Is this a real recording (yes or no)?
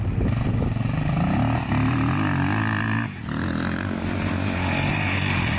yes